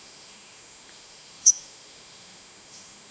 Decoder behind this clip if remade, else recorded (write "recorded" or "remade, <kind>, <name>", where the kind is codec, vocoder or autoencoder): remade, autoencoder, DAC-VAE